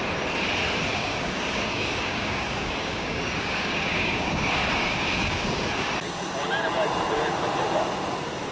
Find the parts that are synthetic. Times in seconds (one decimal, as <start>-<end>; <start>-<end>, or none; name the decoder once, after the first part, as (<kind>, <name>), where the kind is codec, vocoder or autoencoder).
0.9-5.9 (codec, DAC)

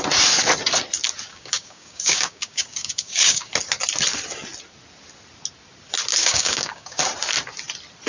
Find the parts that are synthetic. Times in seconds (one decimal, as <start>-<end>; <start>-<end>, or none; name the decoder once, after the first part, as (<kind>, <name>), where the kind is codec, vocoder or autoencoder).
1.3-3.5 (codec, DAC); 6.2-7.0

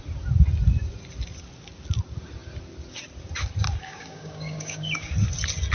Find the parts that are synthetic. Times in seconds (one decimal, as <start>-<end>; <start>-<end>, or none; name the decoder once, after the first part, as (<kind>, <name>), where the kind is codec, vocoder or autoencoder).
3.8-5.1 (codec, DAC)

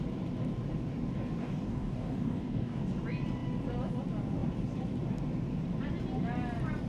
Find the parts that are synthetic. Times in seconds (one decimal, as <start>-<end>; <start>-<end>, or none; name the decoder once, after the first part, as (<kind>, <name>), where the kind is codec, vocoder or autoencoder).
1.4-2.8 (codec, DAC)

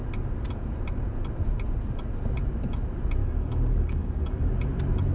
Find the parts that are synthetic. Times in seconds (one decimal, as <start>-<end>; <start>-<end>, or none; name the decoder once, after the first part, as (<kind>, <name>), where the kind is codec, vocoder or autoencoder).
3.2-4.5 (codec, DAC)

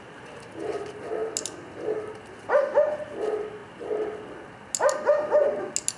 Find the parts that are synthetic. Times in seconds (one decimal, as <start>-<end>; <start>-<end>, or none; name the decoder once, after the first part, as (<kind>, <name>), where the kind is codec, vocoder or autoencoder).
none

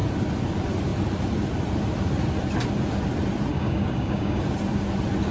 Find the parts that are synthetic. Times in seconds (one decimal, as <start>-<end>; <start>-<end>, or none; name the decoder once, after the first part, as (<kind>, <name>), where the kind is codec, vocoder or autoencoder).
3.5-4.4 (codec, DAC)

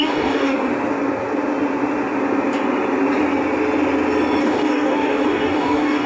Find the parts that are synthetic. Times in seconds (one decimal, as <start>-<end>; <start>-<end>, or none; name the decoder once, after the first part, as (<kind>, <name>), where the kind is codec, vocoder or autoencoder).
0.0-0.7 (codec, DAC); 4.4-6.1